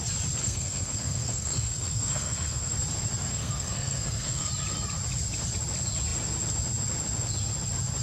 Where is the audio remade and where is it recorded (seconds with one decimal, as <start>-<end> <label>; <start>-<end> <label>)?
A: 0.0-0.4 recorded; 0.4-2.7 remade; 2.7-3.3 recorded; 3.3-4.5 remade; 4.5-8.0 recorded